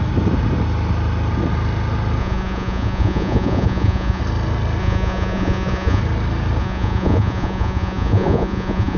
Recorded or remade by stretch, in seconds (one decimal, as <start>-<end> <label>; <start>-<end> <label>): 0.0-2.2 recorded; 2.2-4.2 remade; 4.2-4.8 recorded; 4.8-6.0 remade; 6.0-6.6 recorded; 6.6-9.0 remade